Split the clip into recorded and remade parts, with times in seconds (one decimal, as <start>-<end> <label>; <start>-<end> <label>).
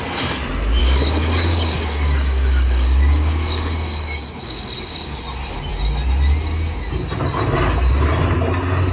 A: 0.0-0.8 recorded; 0.8-5.2 remade; 5.2-8.9 recorded